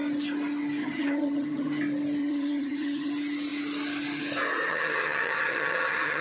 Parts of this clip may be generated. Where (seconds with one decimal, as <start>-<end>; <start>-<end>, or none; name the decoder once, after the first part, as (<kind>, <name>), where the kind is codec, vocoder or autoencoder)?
0.8-1.8 (vocoder, HiFi-GAN); 2.2-3.1; 4.7-6.2